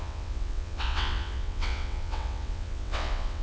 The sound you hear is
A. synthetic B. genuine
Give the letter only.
A